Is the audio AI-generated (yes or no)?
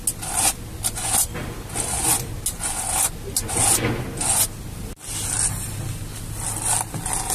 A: no